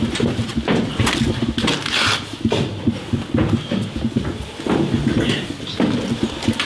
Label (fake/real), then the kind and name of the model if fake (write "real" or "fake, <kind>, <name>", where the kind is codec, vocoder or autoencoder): real